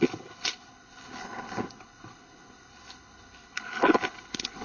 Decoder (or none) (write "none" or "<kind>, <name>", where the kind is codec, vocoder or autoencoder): codec, HILCodec